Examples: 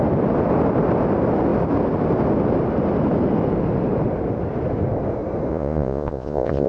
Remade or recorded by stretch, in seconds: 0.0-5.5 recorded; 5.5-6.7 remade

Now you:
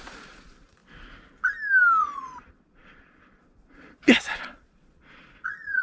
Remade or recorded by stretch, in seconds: 0.0-0.8 remade; 0.8-2.0 recorded; 2.0-5.8 remade